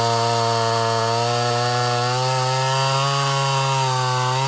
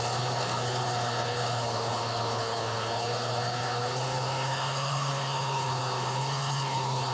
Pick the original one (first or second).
first